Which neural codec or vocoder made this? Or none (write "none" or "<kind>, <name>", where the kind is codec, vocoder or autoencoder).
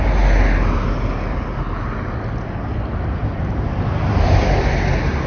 none